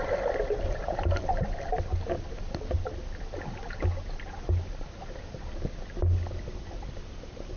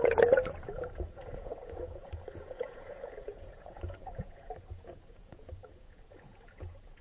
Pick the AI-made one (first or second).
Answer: second